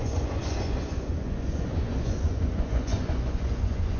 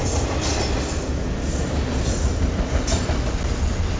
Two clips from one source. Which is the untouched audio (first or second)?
second